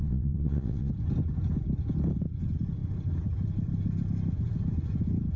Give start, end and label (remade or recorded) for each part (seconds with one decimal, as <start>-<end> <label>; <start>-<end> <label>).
0.0-0.9 remade; 0.9-5.4 recorded